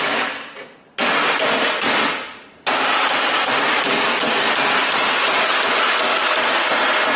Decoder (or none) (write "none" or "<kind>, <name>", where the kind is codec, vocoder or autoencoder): vocoder, BigVGAN v2